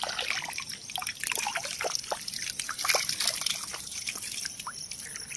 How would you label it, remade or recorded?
recorded